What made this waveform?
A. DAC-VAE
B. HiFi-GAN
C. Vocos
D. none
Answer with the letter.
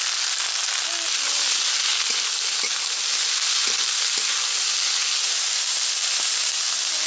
D